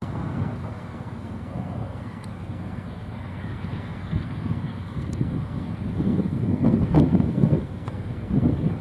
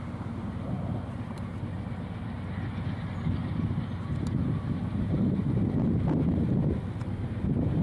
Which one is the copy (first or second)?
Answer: first